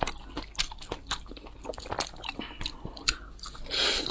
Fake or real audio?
real